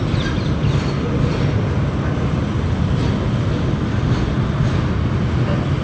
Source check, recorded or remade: recorded